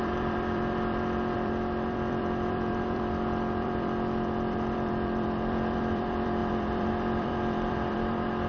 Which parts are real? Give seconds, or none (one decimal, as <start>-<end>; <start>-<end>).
none